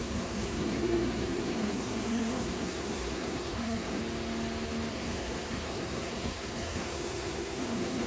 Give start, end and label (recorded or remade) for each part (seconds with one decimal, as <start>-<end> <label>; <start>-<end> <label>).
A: 0.0-4.0 remade; 4.0-4.9 recorded; 4.9-8.1 remade